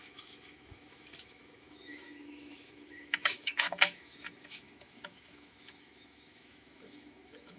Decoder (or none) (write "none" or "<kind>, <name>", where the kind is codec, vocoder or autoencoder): autoencoder, DAC-VAE